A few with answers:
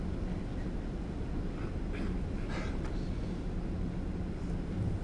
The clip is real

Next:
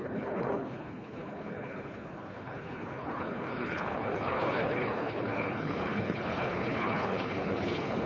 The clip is fake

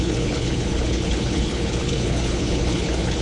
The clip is fake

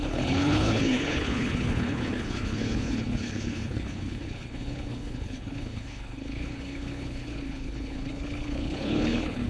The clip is fake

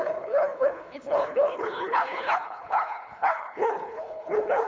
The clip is fake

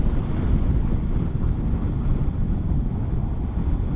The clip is real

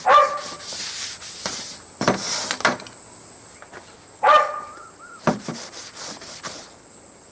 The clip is real